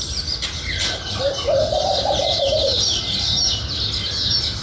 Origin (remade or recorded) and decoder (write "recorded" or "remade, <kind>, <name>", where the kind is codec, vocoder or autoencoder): recorded